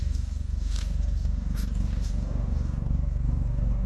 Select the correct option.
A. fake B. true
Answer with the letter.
A